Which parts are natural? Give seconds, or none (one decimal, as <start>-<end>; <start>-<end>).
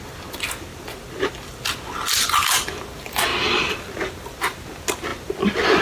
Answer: 0.0-5.8